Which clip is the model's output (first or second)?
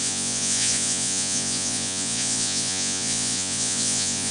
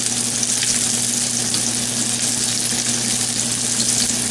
first